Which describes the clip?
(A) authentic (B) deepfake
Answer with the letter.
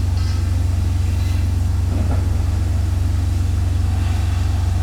A